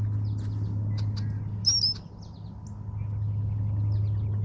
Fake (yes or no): no